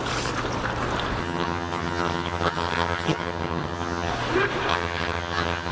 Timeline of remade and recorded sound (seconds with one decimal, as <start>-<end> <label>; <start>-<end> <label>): 0.0-1.2 recorded; 1.2-4.1 remade; 4.1-4.7 recorded; 4.7-5.7 remade